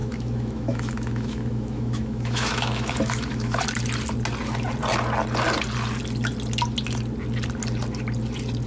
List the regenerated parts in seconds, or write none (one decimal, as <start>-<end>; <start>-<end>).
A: 0.0-3.6